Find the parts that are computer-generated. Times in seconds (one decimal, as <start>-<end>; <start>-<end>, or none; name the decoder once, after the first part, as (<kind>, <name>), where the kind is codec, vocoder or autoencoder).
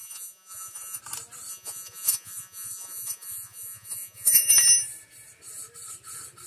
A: 0.0-1.0 (vocoder, Vocos); 1.5-4.5